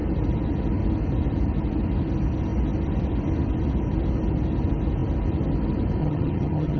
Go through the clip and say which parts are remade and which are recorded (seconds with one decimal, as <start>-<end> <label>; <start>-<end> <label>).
0.0-6.0 recorded; 6.0-6.8 remade